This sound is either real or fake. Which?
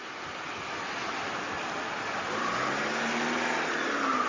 real